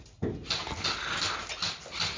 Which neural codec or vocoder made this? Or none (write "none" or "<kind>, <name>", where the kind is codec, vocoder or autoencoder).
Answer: none